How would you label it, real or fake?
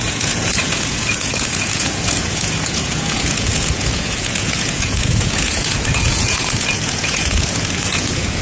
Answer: fake